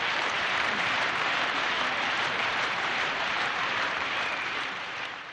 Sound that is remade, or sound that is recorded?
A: remade